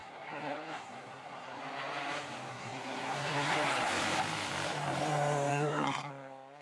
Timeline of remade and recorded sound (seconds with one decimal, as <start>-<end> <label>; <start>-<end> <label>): 0.0-1.6 remade; 1.6-2.5 recorded; 2.5-3.7 remade; 3.7-5.5 recorded; 5.5-6.1 remade; 6.1-6.6 recorded